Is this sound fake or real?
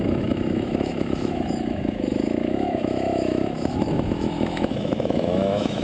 fake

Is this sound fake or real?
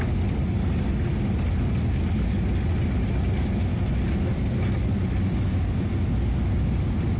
real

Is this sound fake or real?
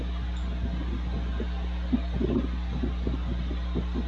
real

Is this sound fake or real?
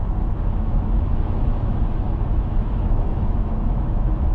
fake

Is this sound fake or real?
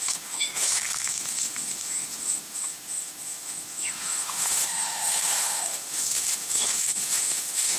fake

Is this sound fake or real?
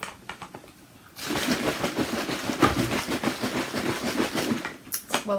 real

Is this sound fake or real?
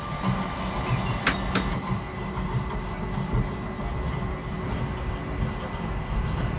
real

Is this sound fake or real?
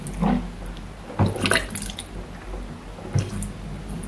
real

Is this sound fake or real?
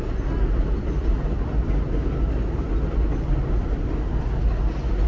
real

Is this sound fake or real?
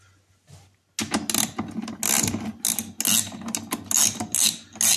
real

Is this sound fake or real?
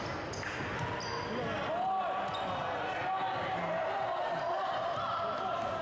real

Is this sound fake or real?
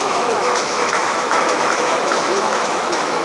fake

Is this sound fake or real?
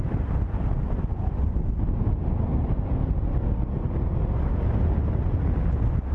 real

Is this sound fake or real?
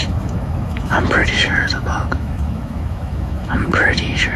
fake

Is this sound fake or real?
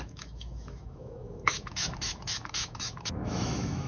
fake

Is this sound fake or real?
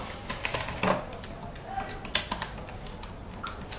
real